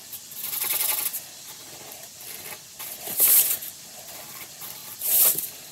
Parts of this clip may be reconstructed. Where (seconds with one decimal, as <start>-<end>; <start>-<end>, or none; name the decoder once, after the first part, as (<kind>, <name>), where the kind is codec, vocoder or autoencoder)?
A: 0.0-1.1 (vocoder, BigVGAN v2); 2.8-5.7